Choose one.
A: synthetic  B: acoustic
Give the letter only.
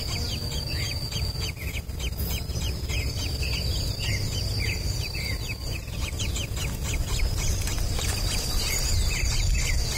B